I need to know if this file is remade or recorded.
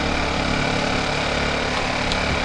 recorded